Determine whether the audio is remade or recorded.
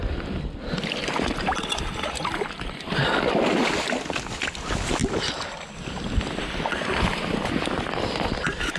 recorded